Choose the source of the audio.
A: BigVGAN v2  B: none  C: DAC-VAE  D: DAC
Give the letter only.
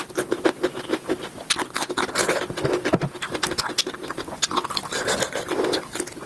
B